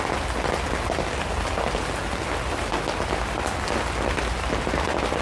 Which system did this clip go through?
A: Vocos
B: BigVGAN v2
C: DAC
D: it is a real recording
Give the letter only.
D